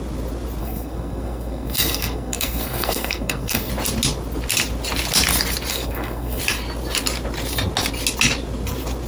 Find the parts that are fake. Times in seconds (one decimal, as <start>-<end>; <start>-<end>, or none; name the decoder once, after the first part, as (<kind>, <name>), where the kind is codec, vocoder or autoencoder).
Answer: 0.6-3.7 (codec, SNAC); 5.7-6.4